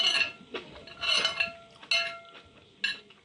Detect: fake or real real